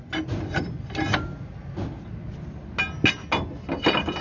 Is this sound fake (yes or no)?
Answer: no